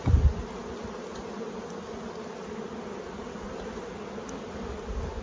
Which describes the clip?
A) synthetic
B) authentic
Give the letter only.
B